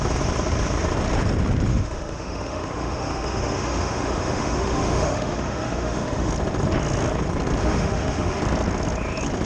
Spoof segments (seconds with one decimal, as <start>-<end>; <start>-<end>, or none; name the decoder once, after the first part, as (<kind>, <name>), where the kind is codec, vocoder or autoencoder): 1.7-6.3 (autoencoder, DAC-VAE); 7.6-8.4